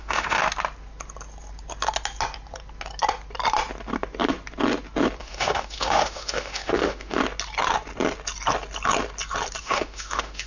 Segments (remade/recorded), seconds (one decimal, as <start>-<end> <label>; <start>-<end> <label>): 0.0-0.4 remade; 0.4-5.2 recorded; 5.2-7.2 remade; 7.2-9.6 recorded; 9.6-10.5 remade